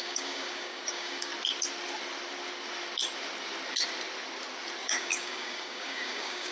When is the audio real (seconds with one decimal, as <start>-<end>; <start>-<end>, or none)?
1.3-4.8